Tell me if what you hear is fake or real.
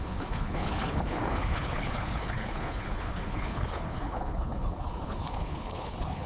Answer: fake